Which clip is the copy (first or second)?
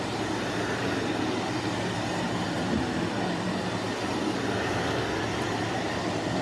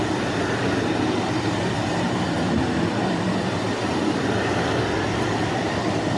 second